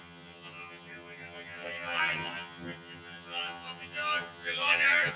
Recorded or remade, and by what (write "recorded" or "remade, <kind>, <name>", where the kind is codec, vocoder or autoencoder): remade, vocoder, HiFi-GAN